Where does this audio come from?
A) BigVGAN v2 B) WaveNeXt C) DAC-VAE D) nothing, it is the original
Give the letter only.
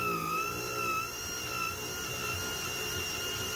D